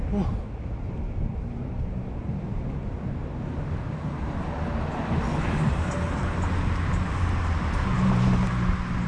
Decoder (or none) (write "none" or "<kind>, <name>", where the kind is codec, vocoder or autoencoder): none